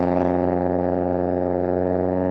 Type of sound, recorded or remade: remade